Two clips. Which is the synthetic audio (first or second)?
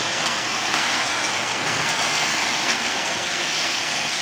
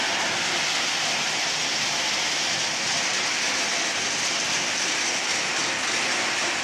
first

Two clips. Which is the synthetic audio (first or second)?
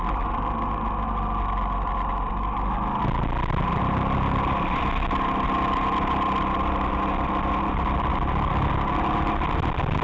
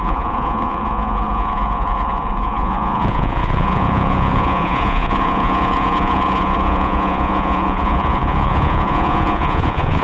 second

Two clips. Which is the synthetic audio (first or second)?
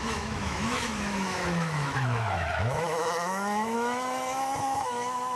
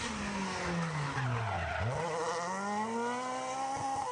first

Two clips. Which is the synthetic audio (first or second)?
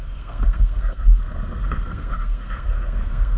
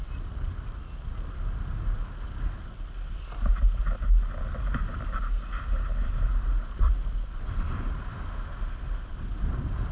first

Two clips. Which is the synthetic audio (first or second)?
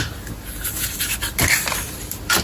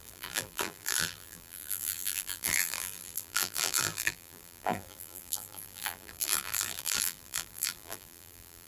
second